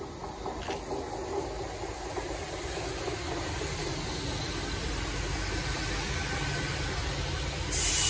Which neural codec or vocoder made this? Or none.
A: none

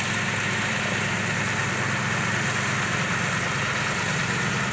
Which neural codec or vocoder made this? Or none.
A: none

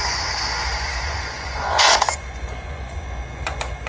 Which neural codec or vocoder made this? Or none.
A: vocoder, Vocos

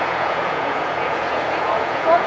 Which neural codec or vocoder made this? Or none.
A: vocoder, Vocos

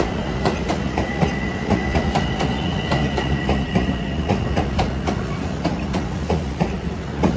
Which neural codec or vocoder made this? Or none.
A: vocoder, Vocos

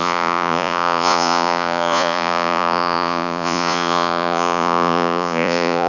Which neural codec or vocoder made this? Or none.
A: vocoder, Vocos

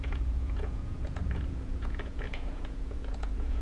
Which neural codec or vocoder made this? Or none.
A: vocoder, Vocos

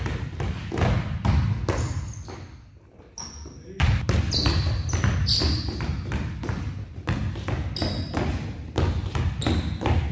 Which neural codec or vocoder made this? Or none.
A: none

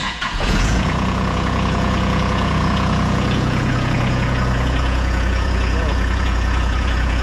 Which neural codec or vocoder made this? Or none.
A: vocoder, Vocos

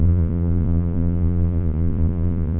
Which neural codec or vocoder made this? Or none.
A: vocoder, Vocos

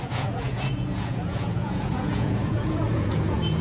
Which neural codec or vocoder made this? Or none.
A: vocoder, Vocos